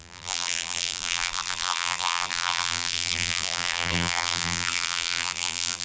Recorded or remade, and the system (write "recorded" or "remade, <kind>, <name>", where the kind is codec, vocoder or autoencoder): remade, vocoder, BigVGAN v2